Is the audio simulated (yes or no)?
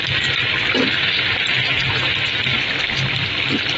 yes